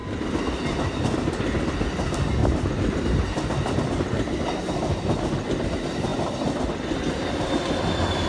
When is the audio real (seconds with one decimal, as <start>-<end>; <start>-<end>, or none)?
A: 0.0-8.3